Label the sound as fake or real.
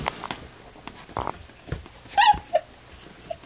real